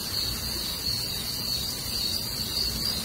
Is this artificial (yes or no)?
no